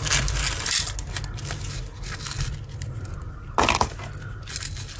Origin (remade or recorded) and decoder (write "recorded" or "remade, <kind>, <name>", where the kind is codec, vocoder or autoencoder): recorded